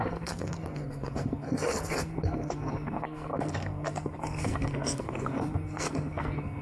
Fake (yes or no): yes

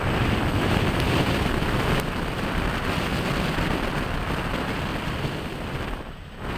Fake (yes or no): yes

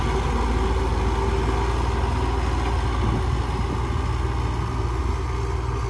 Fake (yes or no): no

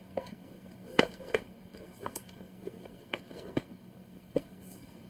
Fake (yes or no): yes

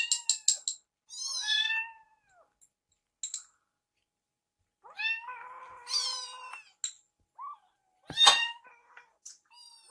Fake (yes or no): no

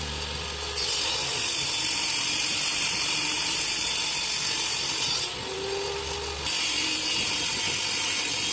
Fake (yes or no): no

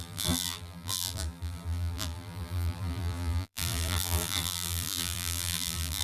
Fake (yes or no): yes